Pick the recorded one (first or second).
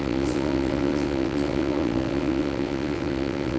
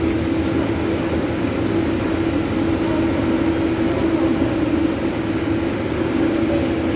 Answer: second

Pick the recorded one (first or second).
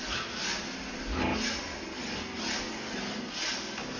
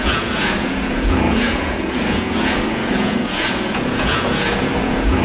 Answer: first